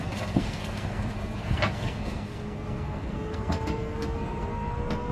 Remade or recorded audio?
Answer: remade